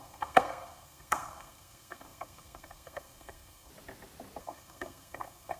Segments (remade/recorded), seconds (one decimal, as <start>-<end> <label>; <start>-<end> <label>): 0.0-3.7 remade; 3.7-4.4 recorded; 4.4-5.6 remade